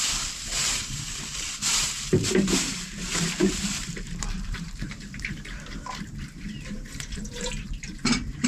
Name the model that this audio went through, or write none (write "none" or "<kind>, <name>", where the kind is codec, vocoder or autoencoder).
vocoder, BigVGAN v2